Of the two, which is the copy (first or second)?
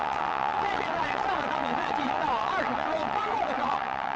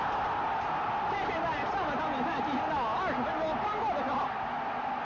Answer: first